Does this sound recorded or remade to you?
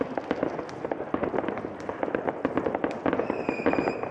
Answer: recorded